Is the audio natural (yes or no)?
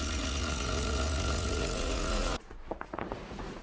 no